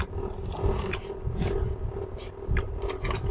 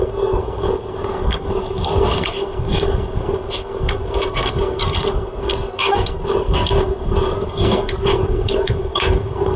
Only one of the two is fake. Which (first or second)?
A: second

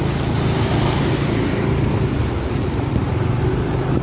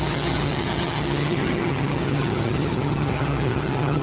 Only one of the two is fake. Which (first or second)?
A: second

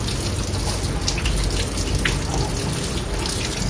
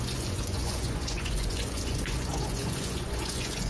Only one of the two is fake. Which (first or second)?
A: second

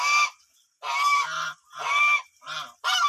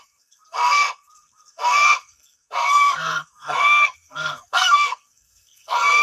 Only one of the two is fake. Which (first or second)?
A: second